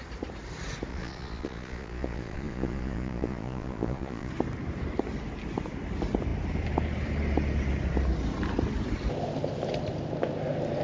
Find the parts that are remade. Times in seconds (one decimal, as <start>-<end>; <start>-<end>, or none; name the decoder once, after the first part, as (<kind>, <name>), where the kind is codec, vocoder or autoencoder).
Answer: 0.9-4.3 (vocoder, Vocos)